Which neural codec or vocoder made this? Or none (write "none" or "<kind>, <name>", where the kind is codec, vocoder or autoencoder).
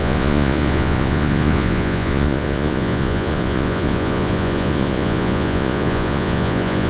vocoder, Vocos